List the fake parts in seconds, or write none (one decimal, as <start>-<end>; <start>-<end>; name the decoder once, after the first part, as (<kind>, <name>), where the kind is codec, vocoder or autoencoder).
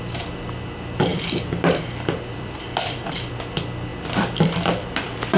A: 1.1-3.3 (vocoder, BigVGAN v2); 3.9-5.4